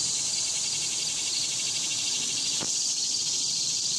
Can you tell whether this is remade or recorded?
remade